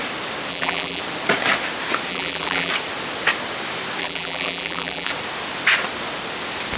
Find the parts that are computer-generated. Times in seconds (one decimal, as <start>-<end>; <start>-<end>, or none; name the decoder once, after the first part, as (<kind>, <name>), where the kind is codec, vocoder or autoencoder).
0.5-1.0 (vocoder, BigVGAN v2); 2.1-2.7; 4.0-5.1